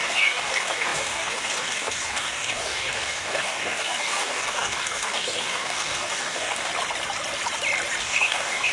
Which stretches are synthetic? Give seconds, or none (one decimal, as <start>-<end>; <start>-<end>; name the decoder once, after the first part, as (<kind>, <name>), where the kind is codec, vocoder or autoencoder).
0.0-6.7 (codec, DAC); 8.0-8.7